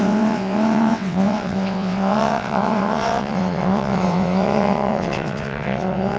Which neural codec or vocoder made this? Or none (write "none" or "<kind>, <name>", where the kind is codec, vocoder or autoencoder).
vocoder, WaveNeXt